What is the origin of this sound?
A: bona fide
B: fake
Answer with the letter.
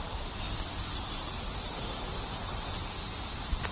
A